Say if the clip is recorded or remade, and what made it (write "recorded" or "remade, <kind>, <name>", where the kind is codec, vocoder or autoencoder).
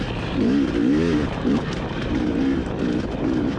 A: recorded